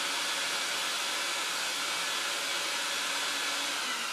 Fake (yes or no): no